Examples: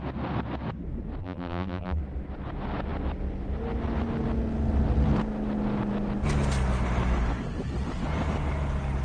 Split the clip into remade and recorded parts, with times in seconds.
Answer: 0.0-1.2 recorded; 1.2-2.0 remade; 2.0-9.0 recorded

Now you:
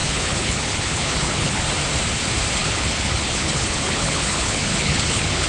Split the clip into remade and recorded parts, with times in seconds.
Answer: 0.0-1.6 remade; 1.6-2.6 recorded; 2.6-5.5 remade

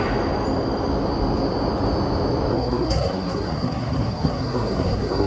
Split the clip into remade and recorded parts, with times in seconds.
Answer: 0.0-2.5 recorded; 2.5-5.3 remade